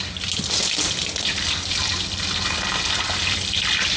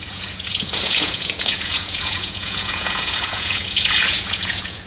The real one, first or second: first